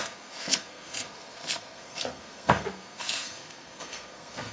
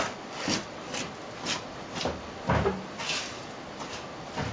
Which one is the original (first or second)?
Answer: second